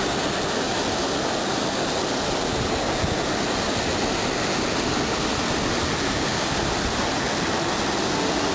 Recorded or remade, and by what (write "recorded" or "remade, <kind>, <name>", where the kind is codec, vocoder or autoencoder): recorded